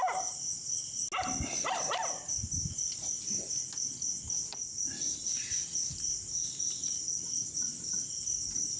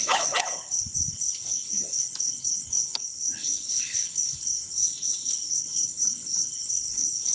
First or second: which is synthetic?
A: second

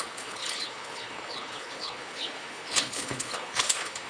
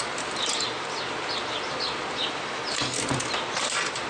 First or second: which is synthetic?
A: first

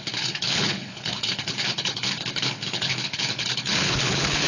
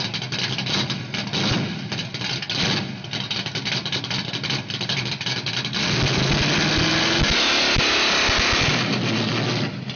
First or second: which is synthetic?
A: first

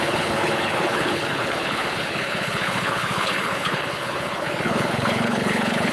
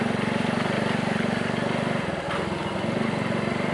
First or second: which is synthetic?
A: first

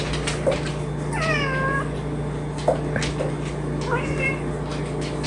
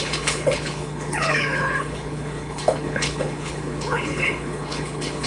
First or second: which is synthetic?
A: second